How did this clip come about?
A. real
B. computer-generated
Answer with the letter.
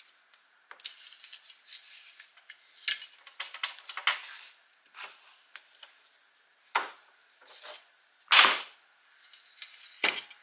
A